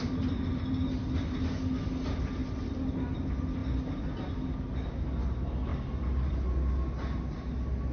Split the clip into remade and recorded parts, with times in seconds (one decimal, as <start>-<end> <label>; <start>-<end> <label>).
0.0-7.9 recorded